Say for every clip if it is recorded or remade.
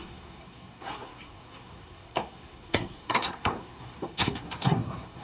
remade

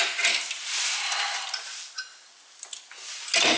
recorded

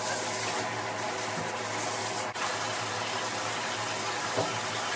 recorded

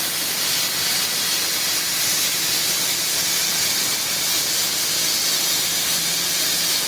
recorded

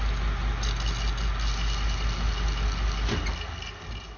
recorded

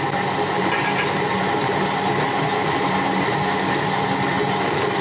recorded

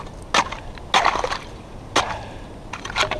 recorded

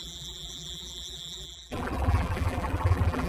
remade